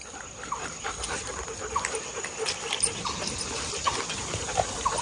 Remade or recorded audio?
recorded